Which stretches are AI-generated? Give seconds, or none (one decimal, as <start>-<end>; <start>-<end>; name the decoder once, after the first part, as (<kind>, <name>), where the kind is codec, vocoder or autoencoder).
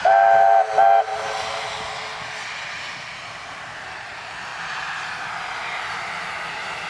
none